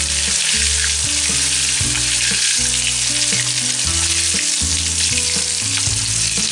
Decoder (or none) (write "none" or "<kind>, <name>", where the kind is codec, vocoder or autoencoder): none